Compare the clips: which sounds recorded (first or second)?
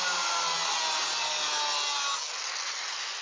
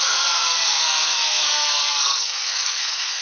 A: first